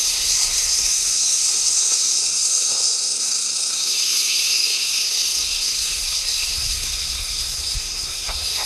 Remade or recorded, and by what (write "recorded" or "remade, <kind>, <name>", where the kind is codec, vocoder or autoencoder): remade, codec, SNAC